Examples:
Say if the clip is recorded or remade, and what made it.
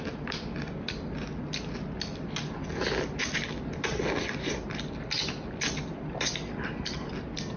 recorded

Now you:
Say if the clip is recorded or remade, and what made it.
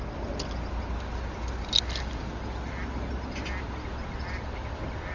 recorded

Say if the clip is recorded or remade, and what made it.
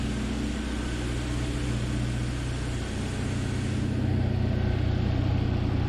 recorded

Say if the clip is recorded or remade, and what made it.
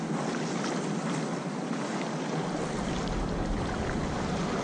recorded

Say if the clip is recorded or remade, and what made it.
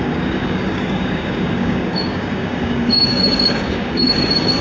remade, codec, DAC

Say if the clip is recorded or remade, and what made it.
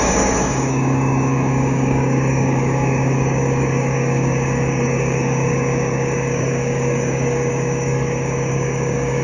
remade, codec, DAC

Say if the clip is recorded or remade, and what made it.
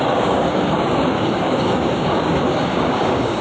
remade, codec, DAC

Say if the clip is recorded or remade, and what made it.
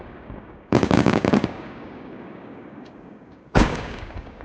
remade, codec, DAC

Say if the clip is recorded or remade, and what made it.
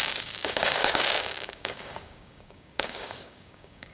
remade, codec, DAC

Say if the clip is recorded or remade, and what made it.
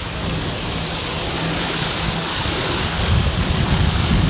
remade, codec, DAC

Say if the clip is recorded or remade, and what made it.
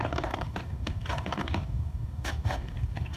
remade, codec, DAC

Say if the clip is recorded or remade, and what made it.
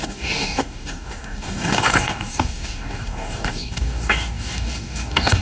remade, codec, DAC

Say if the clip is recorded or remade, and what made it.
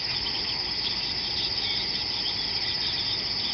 recorded